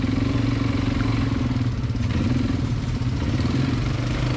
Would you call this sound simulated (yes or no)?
no